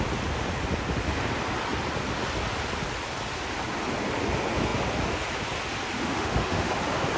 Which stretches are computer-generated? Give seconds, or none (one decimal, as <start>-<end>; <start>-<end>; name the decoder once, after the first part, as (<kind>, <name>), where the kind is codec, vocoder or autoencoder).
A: 6.0-6.7 (autoencoder, DAC-VAE)